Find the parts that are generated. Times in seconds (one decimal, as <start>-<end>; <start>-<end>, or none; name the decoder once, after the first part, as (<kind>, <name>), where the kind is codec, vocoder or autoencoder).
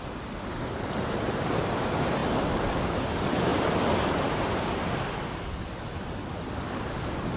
none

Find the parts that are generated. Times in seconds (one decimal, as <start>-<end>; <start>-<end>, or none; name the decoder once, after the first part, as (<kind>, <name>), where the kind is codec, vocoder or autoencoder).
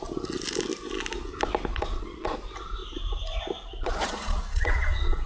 1.7-2.4 (vocoder, Vocos); 3.8-5.3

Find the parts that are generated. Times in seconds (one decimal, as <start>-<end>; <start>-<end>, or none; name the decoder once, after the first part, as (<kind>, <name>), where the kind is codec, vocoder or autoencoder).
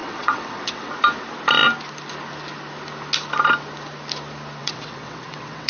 0.0-0.9 (vocoder, WaveNeXt); 4.6-5.7